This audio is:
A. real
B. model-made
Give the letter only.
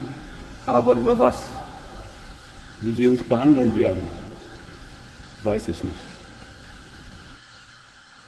B